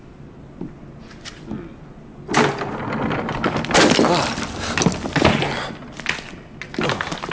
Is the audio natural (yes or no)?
yes